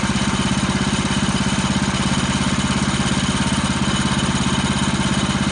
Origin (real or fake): real